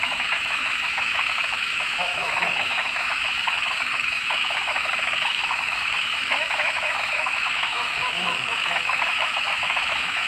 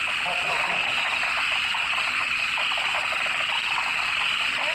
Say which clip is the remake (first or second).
first